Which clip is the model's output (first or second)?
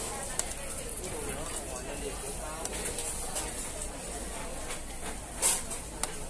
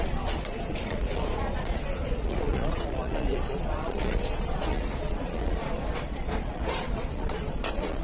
second